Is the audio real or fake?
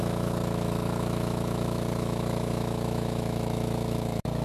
fake